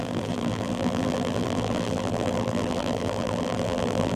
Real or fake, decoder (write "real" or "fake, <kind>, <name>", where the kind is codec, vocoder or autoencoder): fake, vocoder, BigVGAN v2